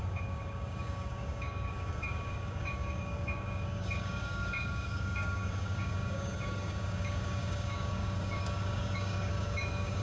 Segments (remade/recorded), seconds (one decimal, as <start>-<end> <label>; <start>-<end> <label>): 0.0-10.0 remade